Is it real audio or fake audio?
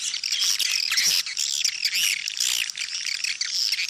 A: real